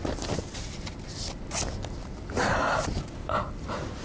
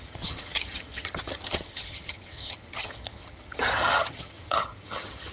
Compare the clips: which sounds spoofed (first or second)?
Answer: second